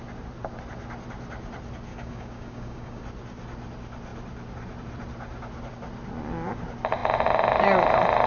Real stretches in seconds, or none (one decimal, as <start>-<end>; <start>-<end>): 0.0-1.9; 3.0-8.3